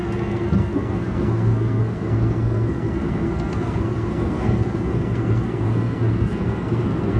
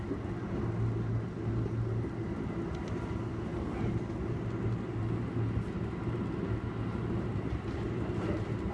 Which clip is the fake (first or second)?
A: first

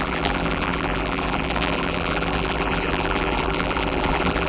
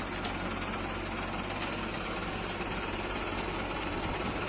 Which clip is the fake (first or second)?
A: first